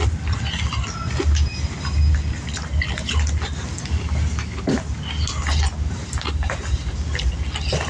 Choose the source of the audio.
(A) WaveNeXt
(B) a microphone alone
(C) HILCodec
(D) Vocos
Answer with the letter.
B